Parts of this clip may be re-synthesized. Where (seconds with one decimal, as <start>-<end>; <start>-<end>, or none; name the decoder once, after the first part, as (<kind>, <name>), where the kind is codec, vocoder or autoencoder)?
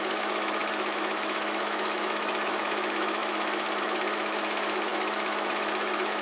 0.0-6.2 (autoencoder, DAC-VAE)